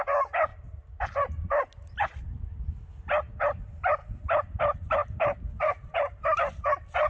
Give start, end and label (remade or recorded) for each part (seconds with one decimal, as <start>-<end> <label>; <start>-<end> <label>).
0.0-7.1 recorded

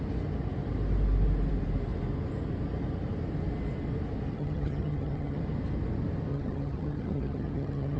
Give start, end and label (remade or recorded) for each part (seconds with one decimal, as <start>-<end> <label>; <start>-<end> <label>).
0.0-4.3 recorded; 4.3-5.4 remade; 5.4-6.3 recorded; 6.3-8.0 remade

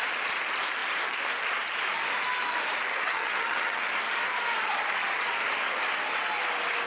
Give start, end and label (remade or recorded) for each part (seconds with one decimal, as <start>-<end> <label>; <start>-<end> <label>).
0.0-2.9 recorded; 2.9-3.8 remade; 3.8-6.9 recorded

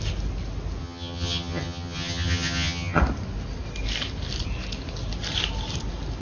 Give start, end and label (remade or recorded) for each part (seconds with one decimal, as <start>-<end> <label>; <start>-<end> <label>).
0.0-0.8 recorded; 0.8-3.0 remade; 3.0-6.2 recorded